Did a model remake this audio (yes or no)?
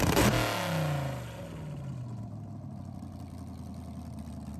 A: no